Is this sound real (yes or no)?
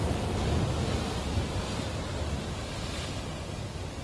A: yes